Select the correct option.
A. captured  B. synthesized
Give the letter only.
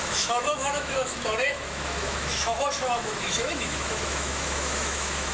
B